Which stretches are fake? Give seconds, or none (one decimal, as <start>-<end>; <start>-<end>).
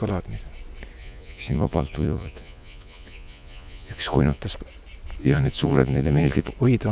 1.0-4.4; 5.2-6.5